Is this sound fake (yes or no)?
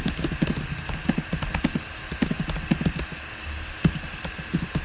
no